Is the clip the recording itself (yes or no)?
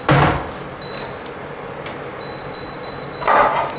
yes